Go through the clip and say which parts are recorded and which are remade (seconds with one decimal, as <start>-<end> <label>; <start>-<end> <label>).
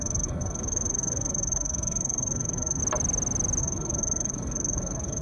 0.0-2.8 remade; 2.8-3.6 recorded; 3.6-5.2 remade